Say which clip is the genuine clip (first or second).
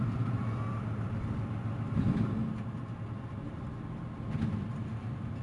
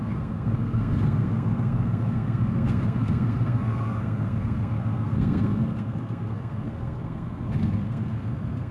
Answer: first